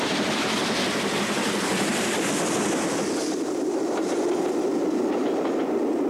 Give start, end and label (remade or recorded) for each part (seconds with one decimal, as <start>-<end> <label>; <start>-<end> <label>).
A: 0.0-1.9 recorded; 1.9-5.6 remade; 5.6-6.1 recorded